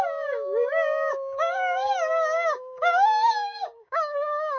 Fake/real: fake